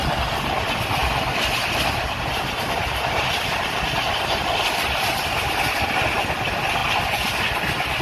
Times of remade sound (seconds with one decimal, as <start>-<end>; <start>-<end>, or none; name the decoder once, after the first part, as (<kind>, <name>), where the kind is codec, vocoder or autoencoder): none